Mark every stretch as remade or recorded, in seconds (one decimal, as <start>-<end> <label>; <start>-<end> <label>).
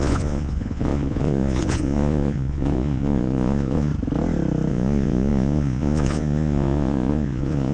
0.0-3.9 remade; 3.9-4.7 recorded; 4.7-7.7 remade